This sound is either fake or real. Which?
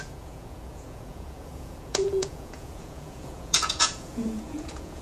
fake